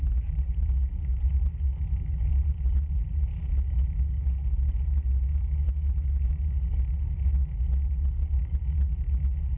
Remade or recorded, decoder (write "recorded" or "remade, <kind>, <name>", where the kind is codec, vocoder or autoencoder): recorded